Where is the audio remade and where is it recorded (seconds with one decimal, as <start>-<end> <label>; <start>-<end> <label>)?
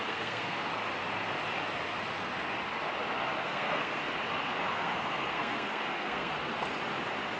0.0-0.7 remade; 0.7-3.4 recorded; 3.4-4.0 remade; 4.0-4.7 recorded; 4.7-6.5 remade; 6.5-7.4 recorded